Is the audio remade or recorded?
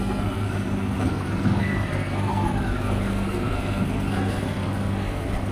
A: remade